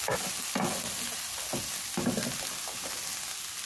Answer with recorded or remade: recorded